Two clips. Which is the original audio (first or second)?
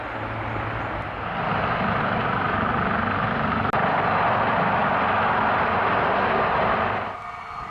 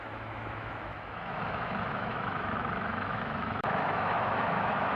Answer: first